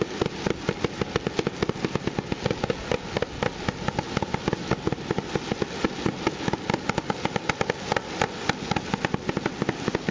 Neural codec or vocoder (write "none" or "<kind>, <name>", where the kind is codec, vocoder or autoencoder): none